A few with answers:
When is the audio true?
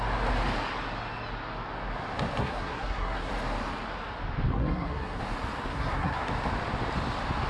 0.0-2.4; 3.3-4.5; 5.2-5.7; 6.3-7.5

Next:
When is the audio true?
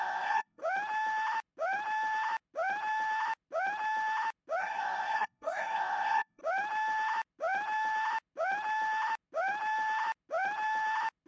0.6-4.6; 6.4-11.3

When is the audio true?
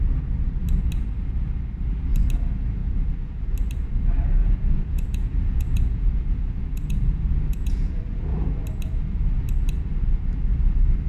0.0-2.8; 3.3-4.4; 8.5-11.1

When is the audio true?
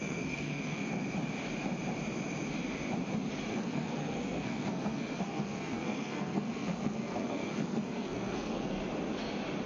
1.0-3.5; 8.8-9.7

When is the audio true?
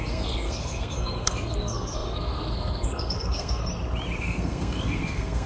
3.6-4.2